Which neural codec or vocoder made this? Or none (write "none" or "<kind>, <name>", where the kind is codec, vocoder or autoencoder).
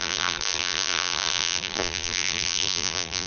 vocoder, BigVGAN v2